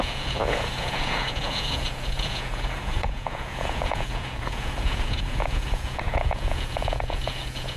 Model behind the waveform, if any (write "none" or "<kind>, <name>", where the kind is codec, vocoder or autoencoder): vocoder, Vocos